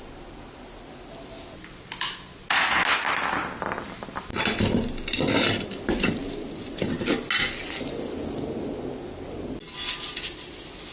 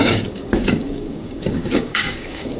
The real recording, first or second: first